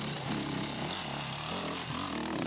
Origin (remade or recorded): recorded